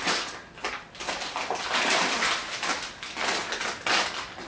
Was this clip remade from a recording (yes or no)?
no